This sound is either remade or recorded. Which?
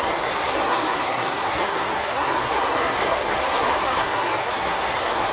remade